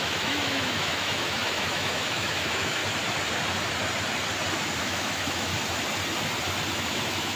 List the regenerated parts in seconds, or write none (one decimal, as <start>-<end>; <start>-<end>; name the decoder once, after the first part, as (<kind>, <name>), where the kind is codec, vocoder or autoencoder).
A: 0.0-2.8 (autoencoder, DAC-VAE); 4.8-5.5; 6.7-7.4